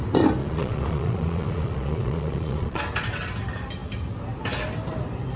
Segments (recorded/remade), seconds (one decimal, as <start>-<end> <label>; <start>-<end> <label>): 0.0-0.4 recorded; 0.4-2.8 remade; 2.8-5.4 recorded